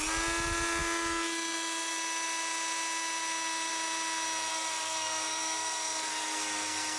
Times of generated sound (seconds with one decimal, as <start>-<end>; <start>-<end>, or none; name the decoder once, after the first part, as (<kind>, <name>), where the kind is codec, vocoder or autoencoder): 4.5-7.0 (codec, SNAC)